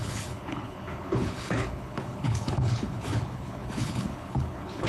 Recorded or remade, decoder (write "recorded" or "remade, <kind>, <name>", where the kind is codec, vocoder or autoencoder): remade, codec, HILCodec